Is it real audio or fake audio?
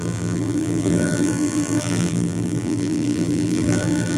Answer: fake